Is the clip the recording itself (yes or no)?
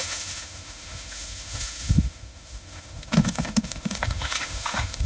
no